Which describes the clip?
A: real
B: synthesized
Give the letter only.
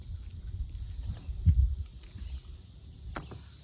A